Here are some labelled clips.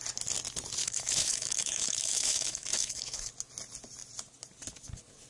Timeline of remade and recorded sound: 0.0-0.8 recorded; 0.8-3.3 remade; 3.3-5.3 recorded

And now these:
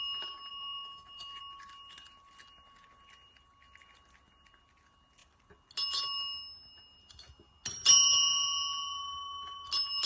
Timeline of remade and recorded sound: 0.0-0.5 recorded; 0.5-1.4 remade; 1.4-10.1 recorded

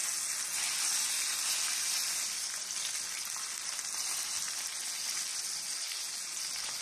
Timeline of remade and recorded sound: 0.0-6.8 recorded

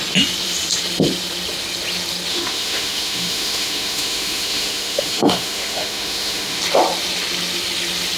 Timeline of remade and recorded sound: 0.0-2.3 recorded; 2.3-6.6 remade; 6.6-8.2 recorded